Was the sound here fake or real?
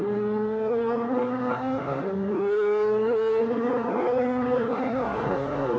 fake